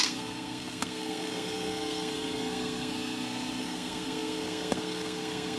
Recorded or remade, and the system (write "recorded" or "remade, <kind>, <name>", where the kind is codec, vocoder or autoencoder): remade, codec, SNAC